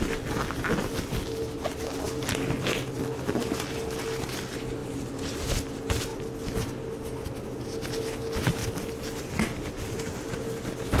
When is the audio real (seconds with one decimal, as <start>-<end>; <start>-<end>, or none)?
0.0-4.8; 5.4-6.1; 7.3-11.0